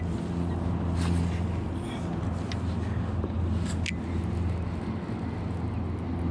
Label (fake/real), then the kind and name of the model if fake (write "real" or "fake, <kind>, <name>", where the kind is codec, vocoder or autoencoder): real